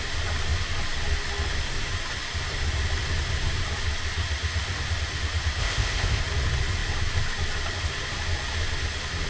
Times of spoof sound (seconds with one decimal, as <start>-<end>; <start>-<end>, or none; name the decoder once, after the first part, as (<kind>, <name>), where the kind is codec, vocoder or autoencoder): 5.6-6.2 (codec, ZipCodec)